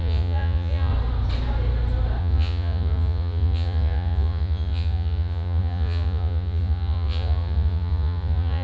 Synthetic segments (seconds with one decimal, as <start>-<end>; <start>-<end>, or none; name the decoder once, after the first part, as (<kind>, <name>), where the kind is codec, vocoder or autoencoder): 0.0-0.9 (vocoder, Vocos); 2.2-8.6